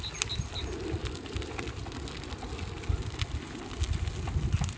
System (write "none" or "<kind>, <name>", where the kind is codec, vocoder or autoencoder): none